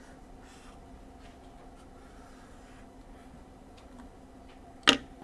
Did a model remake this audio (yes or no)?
no